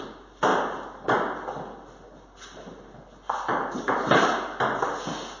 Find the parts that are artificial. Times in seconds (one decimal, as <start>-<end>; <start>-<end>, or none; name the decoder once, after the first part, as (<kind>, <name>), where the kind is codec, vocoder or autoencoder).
none